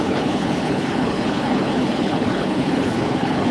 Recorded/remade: remade